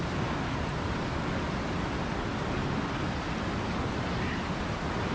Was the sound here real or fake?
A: real